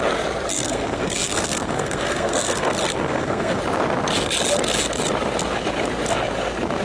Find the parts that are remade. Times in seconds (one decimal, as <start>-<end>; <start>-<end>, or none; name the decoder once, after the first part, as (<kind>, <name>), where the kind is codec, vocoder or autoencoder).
0.5-3.6 (codec, SNAC)